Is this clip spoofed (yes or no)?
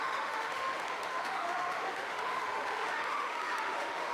yes